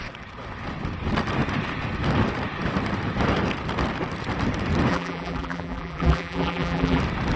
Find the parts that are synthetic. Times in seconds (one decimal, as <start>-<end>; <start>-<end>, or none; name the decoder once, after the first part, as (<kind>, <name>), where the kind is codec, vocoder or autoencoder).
4.9-7.0 (vocoder, BigVGAN v2)